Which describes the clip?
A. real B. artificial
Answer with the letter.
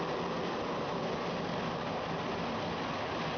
A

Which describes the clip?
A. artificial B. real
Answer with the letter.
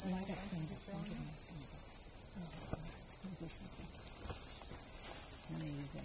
B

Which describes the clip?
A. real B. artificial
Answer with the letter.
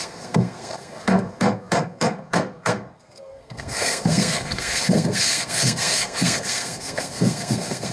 B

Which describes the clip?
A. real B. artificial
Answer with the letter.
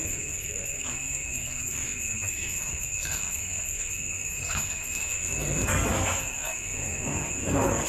B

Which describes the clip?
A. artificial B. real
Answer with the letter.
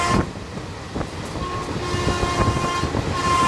B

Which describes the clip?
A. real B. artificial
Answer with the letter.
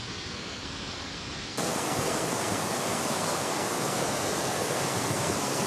B